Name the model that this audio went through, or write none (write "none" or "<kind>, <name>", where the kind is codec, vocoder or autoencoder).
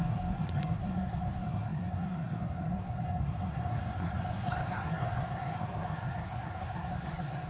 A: codec, SNAC